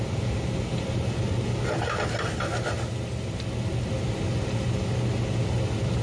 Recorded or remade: recorded